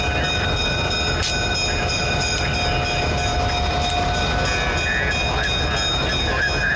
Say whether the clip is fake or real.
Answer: real